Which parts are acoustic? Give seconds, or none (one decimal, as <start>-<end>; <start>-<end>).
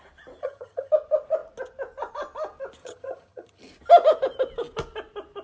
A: 0.0-0.4; 0.9-2.8; 3.7-5.4